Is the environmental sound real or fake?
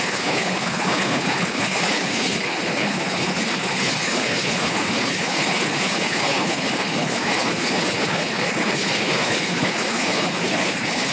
fake